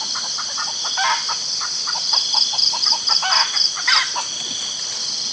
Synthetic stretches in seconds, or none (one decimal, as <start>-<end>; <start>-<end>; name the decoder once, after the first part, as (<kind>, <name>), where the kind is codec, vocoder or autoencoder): none